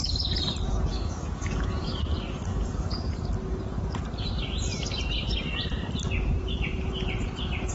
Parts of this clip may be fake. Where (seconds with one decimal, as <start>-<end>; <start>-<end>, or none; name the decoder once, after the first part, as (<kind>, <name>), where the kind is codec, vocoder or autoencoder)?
0.9-2.0 (codec, DAC); 2.5-3.1